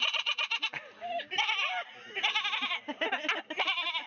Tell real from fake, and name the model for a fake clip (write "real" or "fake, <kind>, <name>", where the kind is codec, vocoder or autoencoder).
real